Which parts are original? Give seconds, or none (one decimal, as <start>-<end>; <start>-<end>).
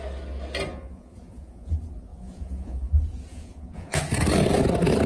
0.0-0.7; 1.7-2.1; 2.9-3.3; 4.0-5.1